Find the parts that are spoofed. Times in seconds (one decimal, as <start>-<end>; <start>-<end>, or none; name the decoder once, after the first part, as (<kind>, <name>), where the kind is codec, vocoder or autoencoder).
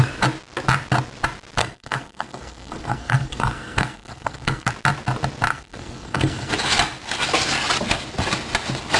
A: 1.6-4.7 (codec, SNAC); 5.5-6.5